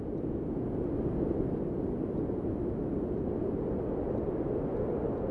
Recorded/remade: recorded